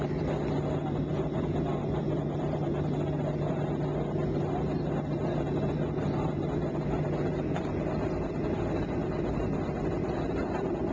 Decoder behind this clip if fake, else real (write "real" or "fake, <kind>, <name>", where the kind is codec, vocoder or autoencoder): real